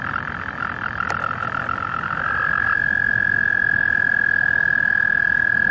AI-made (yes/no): no